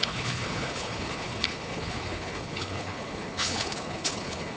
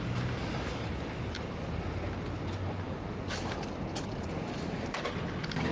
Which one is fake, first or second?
first